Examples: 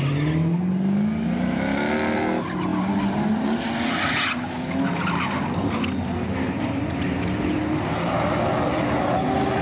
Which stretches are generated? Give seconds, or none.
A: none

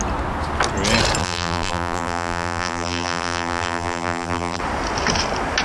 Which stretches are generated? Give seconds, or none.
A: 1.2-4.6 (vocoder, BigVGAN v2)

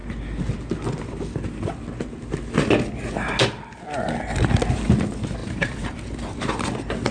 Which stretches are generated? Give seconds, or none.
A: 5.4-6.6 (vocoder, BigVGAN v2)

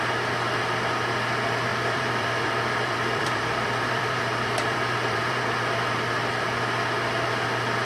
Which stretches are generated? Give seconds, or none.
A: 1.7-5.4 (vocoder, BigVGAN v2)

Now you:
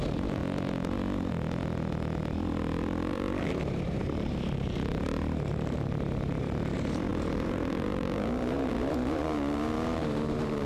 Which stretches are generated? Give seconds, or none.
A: 0.0-0.4 (vocoder, BigVGAN v2); 3.1-10.7

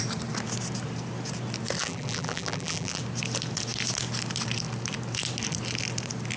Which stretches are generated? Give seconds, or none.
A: 1.8-3.0 (vocoder, BigVGAN v2)

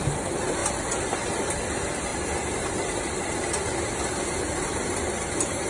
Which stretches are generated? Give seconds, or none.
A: none